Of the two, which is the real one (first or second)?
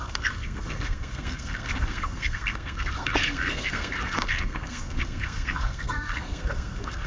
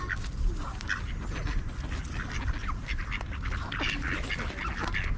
second